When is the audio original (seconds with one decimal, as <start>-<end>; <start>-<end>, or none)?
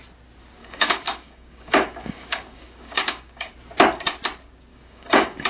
0.0-0.6; 3.5-4.7